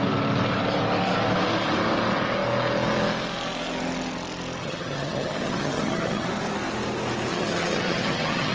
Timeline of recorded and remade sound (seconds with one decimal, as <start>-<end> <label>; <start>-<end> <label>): 0.0-4.6 recorded; 4.6-6.3 remade; 6.3-7.3 recorded; 7.3-8.5 remade